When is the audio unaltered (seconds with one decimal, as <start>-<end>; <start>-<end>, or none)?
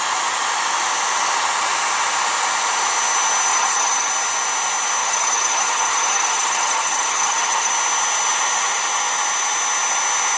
0.0-3.5; 4.1-5.0; 7.7-10.4